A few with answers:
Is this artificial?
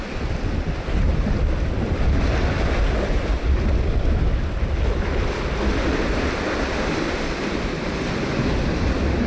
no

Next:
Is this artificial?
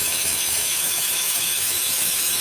yes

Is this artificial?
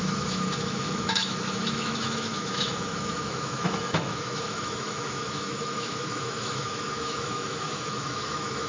yes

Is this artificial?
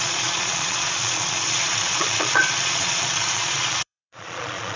yes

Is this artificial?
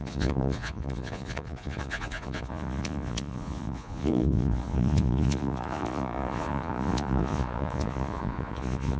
yes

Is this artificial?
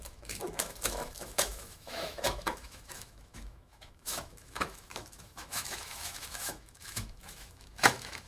yes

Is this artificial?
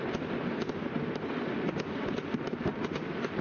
no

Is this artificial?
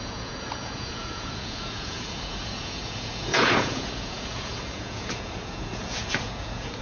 yes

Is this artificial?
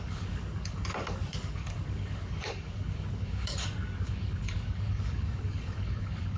yes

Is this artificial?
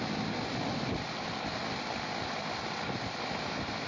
no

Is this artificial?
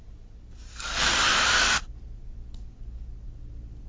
no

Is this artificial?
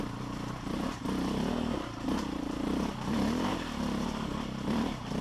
no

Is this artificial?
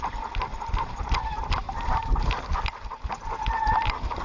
no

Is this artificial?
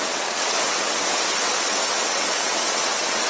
yes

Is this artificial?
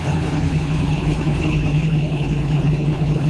yes